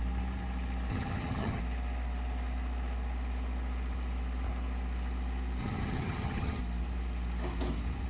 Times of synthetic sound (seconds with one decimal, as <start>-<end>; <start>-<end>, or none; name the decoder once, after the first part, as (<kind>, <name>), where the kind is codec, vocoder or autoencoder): 0.9-1.6 (vocoder, HiFi-GAN); 5.6-6.6